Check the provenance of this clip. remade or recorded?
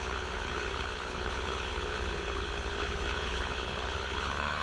remade